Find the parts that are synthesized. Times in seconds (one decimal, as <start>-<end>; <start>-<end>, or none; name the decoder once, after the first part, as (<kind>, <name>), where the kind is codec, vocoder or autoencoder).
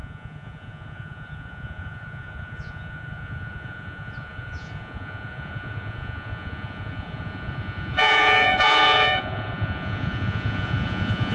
0.0-11.3 (vocoder, Vocos)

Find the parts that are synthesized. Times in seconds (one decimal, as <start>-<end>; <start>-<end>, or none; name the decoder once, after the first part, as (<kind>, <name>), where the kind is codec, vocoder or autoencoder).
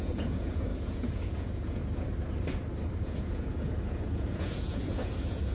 0.0-1.8 (vocoder, Vocos); 3.0-5.5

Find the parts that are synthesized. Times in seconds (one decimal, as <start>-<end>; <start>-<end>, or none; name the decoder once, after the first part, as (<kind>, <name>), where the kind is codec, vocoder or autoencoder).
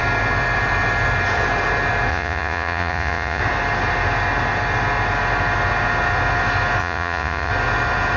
2.1-3.4 (vocoder, Vocos); 6.8-7.5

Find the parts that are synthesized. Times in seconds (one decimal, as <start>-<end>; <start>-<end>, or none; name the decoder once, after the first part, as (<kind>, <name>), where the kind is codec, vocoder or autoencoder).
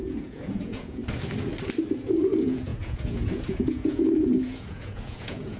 0.0-1.0 (vocoder, Vocos); 1.9-5.6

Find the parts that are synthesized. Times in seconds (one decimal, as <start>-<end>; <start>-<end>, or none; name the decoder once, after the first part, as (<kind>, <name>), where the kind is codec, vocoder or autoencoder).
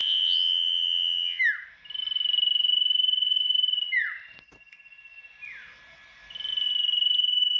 0.0-1.4 (vocoder, Vocos)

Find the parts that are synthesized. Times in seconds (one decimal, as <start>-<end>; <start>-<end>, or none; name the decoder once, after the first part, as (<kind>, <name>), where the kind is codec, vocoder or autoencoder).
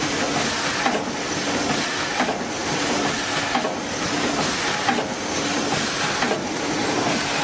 none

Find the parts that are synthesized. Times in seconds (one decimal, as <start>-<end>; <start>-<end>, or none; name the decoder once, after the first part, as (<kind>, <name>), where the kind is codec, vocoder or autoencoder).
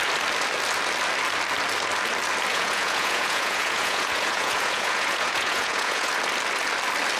2.5-6.1 (vocoder, Vocos)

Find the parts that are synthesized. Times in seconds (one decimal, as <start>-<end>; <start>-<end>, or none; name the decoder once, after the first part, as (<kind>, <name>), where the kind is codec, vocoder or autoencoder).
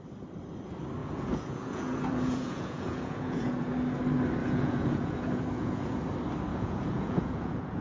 1.0-3.7 (vocoder, Vocos); 4.4-6.0; 6.5-7.8